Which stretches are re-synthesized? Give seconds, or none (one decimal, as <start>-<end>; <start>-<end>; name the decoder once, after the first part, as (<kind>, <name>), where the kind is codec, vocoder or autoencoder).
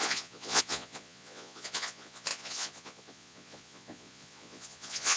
0.0-5.2 (vocoder, Vocos)